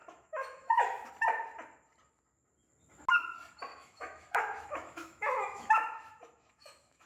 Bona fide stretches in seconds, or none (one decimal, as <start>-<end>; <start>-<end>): 1.1-3.7